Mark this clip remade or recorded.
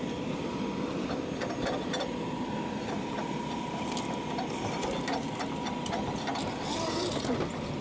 recorded